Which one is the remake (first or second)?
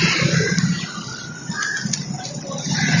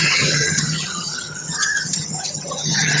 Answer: second